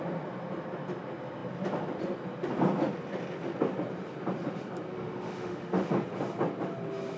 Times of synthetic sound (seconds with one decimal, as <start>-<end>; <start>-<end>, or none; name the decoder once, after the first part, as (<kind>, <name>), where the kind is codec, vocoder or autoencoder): 4.9-5.9 (autoencoder, DAC-VAE)